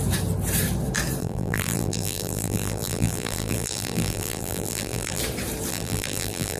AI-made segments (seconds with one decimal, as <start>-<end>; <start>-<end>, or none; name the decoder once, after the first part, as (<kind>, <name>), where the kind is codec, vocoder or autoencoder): 1.2-5.2 (vocoder, BigVGAN v2); 5.7-6.6